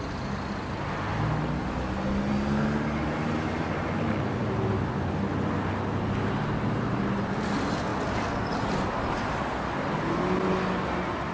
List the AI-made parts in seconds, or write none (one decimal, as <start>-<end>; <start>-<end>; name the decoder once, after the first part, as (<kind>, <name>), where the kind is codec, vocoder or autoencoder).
none

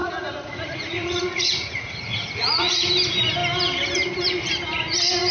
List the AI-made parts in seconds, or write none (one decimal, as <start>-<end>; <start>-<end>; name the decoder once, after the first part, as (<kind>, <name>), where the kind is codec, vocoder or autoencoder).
0.0-2.9 (vocoder, Vocos)

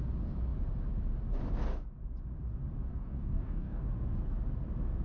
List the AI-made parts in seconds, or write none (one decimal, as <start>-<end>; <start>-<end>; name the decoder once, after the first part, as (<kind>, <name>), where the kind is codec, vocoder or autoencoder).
2.9-3.8 (codec, DAC)

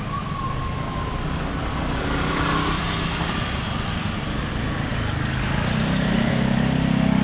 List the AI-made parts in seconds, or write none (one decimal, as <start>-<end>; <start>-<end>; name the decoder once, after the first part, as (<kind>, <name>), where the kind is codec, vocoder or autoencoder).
none

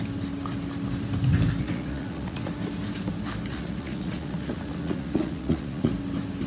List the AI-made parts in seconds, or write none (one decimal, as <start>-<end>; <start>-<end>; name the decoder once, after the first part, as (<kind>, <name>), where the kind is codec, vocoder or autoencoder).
1.6-2.5 (vocoder, Vocos); 3.5-5.9